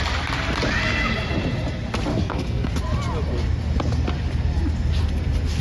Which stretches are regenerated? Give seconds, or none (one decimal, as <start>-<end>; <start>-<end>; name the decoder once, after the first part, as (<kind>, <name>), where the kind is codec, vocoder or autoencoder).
2.1-2.7 (codec, SNAC)